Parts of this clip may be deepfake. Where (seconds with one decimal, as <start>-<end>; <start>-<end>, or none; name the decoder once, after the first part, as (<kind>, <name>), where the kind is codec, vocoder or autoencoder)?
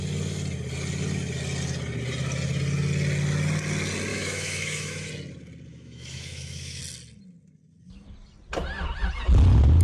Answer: 4.1-5.1 (autoencoder, DAC-VAE); 5.7-6.8